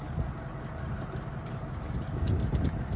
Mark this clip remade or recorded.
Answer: recorded